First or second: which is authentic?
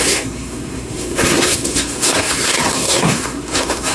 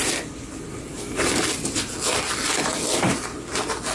second